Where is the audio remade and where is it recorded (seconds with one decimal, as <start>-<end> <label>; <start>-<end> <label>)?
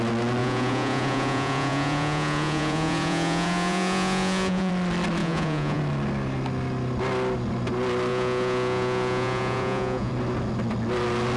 0.0-0.4 recorded; 0.4-4.7 remade; 4.7-5.2 recorded; 5.2-5.8 remade; 5.8-8.1 recorded; 8.1-10.1 remade; 10.1-11.4 recorded